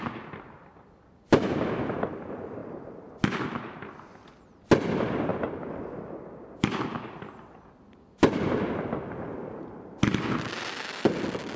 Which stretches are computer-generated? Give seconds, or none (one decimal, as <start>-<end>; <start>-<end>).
none